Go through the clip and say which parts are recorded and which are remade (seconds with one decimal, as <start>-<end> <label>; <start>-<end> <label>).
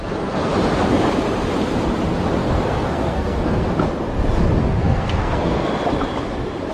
0.0-0.5 remade; 0.5-2.4 recorded; 2.4-3.7 remade; 3.7-4.6 recorded; 4.6-5.7 remade; 5.7-6.7 recorded